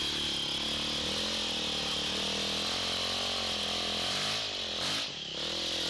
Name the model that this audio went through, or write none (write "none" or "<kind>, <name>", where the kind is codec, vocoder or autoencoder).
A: none